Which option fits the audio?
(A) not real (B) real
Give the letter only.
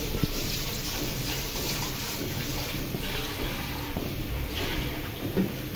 A